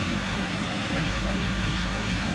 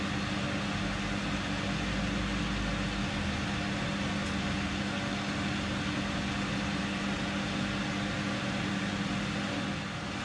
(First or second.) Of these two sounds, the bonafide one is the second